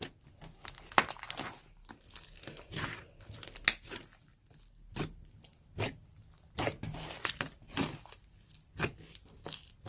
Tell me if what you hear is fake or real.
real